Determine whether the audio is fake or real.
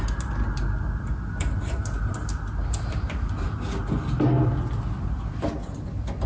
real